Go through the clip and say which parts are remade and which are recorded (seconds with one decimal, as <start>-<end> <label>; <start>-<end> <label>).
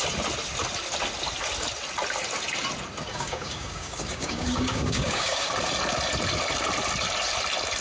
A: 0.0-3.1 recorded; 3.1-5.5 remade; 5.5-7.8 recorded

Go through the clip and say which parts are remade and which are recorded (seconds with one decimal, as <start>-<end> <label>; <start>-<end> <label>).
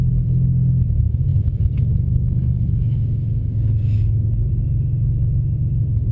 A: 0.0-1.3 recorded; 1.3-4.5 remade; 4.5-6.1 recorded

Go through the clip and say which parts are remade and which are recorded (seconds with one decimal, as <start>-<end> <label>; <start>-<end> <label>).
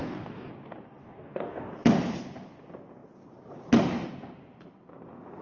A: 0.0-0.5 remade; 0.5-1.0 recorded; 1.0-1.7 remade; 1.7-5.4 recorded